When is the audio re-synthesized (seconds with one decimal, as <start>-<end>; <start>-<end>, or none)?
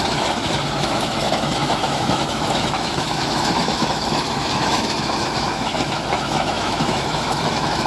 0.0-7.9